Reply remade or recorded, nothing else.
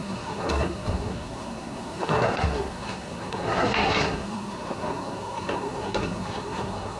remade